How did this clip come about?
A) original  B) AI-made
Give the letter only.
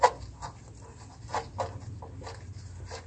A